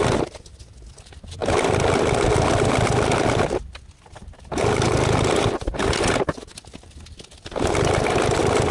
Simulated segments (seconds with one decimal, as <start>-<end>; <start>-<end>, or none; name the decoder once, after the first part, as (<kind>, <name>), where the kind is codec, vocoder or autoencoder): none